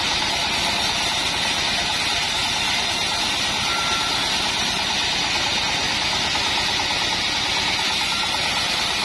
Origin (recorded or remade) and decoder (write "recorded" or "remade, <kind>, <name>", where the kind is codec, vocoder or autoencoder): recorded